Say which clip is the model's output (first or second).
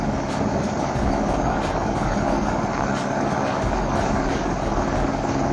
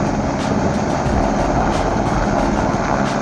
first